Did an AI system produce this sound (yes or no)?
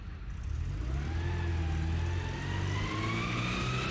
no